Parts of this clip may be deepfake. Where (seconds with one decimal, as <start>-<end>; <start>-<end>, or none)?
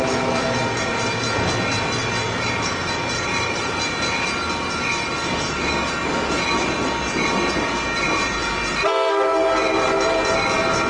3.3-3.8